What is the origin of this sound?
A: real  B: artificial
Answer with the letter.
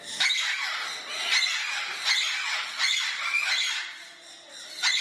A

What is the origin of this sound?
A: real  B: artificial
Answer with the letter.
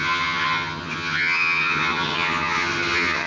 B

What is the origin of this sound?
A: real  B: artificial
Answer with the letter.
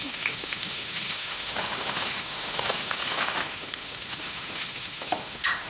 B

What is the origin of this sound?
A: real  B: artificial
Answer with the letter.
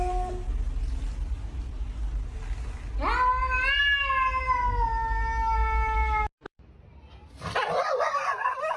A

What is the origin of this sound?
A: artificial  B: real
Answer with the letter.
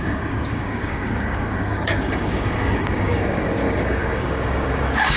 A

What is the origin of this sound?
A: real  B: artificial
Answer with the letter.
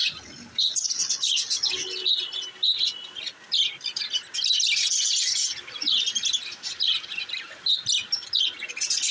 A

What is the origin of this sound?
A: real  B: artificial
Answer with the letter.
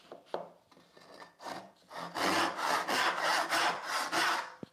A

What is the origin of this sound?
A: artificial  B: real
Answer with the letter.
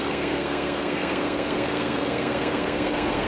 A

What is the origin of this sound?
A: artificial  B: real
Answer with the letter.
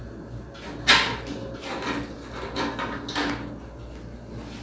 B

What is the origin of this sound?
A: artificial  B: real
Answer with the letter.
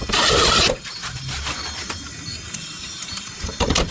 B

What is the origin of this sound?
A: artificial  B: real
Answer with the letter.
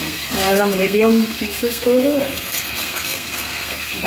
A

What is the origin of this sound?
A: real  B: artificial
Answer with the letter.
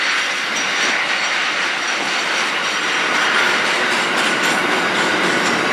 A